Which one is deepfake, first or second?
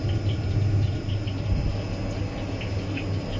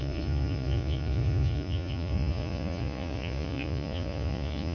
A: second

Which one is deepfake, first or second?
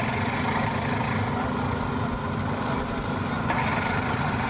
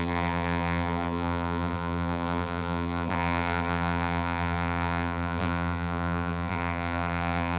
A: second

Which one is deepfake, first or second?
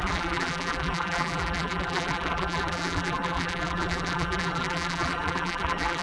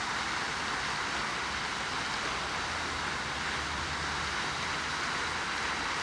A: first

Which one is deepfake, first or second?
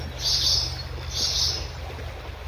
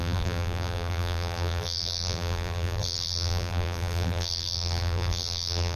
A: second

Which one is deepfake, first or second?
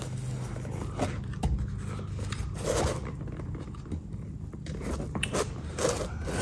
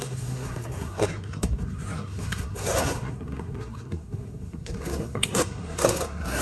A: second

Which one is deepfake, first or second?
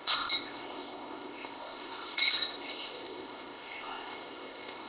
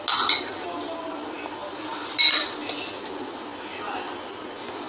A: first